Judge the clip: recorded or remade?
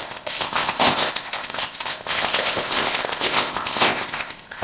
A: remade